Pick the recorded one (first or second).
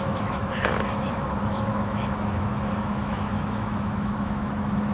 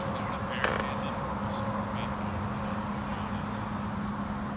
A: second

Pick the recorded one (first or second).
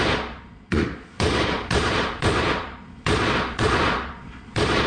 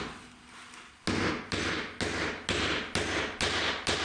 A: second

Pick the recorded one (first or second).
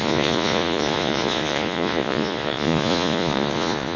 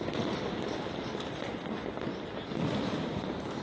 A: second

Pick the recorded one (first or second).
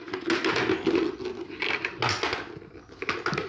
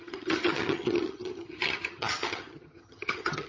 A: first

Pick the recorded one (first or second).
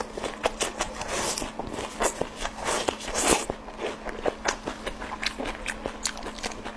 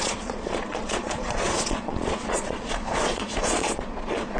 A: first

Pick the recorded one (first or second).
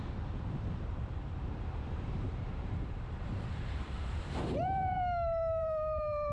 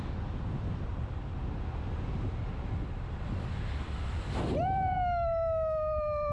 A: second